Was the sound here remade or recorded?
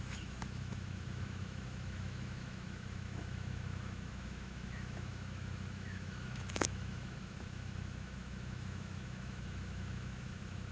remade